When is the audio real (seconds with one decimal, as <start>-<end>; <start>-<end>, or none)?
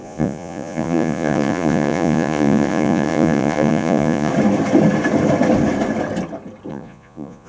4.3-6.7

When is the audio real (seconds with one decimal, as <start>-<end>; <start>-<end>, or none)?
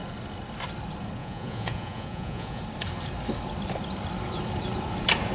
0.0-1.2; 2.6-5.3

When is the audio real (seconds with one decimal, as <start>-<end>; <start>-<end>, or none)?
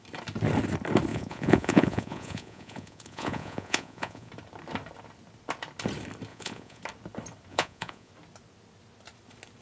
0.0-1.1; 4.3-6.3; 6.8-7.5; 8.1-9.6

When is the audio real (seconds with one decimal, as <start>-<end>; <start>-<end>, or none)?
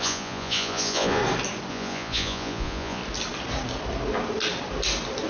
1.2-1.7; 3.0-5.3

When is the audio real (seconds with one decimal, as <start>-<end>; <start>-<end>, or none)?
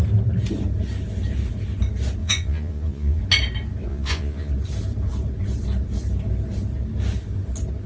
0.0-2.2; 3.2-3.9; 4.5-7.9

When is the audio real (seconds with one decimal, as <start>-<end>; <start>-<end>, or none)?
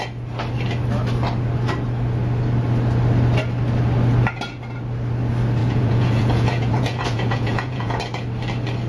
0.0-5.6; 8.0-8.9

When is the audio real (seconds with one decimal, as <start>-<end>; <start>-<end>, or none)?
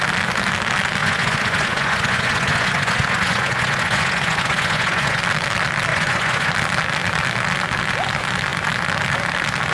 0.0-1.0; 5.2-5.9; 6.5-9.7